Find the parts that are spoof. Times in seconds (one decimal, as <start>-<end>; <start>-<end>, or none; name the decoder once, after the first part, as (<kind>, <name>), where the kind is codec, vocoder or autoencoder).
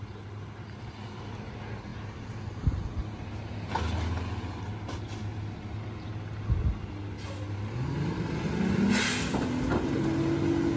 none